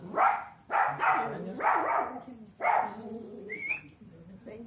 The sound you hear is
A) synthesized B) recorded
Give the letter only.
B